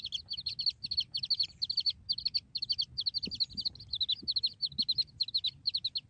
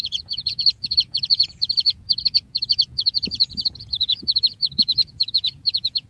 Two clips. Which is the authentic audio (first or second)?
first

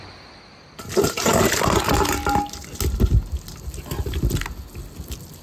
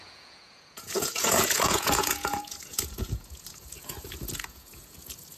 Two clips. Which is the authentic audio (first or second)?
first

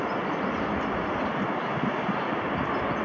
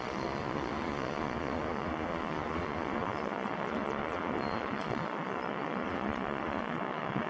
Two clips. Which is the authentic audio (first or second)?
first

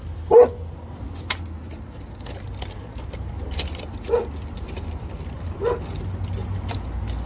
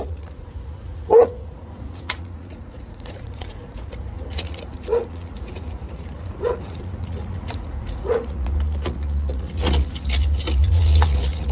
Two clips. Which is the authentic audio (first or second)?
first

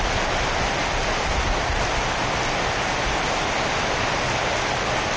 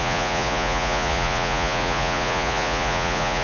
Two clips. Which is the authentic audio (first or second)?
first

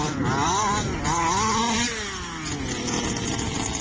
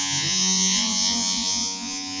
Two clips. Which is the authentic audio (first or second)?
first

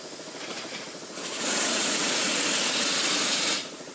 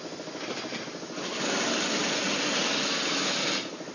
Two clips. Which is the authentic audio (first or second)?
second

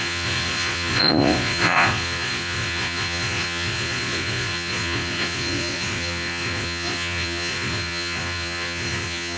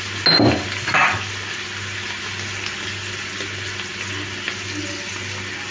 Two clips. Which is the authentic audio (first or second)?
second